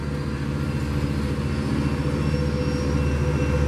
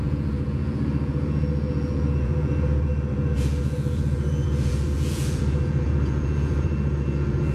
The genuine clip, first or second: first